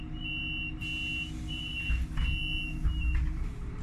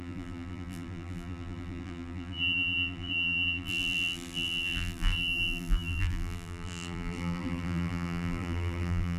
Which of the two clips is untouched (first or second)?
first